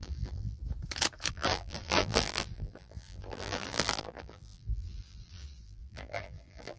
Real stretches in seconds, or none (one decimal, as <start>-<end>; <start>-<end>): 0.6-1.3